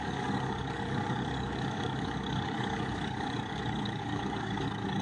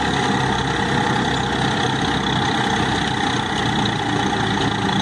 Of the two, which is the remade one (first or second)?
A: first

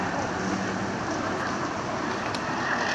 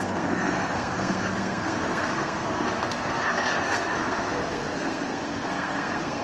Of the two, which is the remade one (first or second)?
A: second